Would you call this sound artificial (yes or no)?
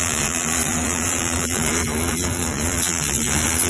yes